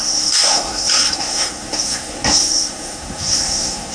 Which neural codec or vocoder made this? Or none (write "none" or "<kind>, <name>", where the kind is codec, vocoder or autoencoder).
codec, SNAC